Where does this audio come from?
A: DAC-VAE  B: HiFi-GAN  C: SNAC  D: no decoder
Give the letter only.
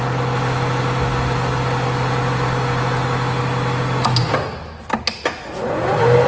D